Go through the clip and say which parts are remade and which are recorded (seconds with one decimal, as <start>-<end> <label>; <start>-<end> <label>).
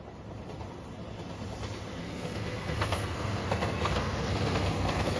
0.0-2.0 recorded; 2.0-5.2 remade